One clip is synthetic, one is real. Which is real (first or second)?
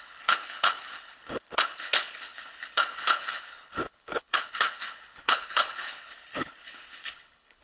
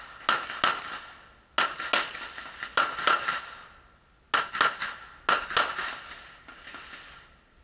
second